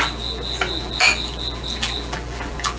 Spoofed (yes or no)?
yes